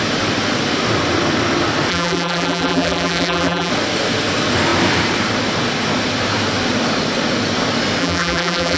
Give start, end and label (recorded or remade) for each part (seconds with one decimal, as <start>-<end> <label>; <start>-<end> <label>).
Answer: 0.0-1.9 recorded; 1.9-3.7 remade; 3.7-8.0 recorded; 8.0-8.8 remade